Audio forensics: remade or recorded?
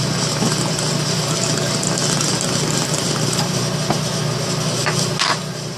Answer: recorded